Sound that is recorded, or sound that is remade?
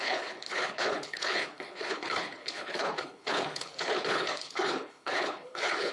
remade